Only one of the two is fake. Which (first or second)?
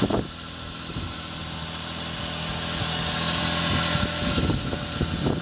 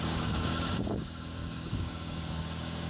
second